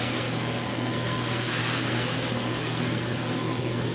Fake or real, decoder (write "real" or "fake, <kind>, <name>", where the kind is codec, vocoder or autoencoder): fake, codec, SNAC